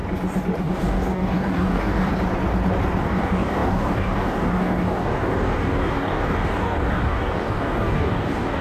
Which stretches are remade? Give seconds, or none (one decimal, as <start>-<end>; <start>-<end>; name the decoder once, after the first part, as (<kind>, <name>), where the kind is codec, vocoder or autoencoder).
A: 0.6-2.1 (codec, DAC); 3.0-8.6